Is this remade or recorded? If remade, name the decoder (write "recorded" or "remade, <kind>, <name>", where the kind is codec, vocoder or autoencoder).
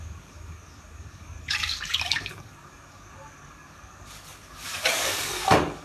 remade, codec, DAC